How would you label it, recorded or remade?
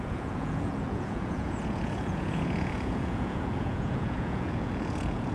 remade